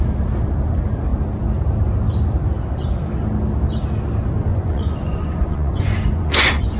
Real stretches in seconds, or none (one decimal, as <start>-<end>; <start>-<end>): 0.0-4.5